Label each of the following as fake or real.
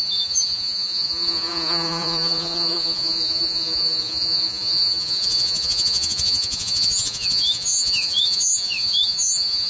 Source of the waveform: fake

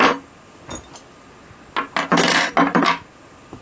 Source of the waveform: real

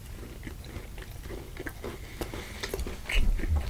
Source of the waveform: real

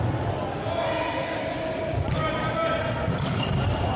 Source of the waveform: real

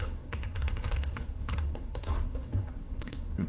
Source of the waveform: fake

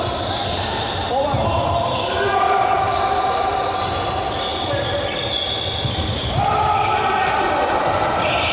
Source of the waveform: real